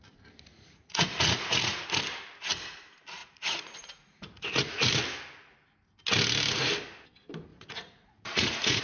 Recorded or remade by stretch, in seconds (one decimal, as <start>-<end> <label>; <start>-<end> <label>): 0.0-0.5 recorded; 0.5-2.0 remade; 2.0-3.2 recorded; 3.2-4.9 remade; 4.9-7.5 recorded; 7.5-8.8 remade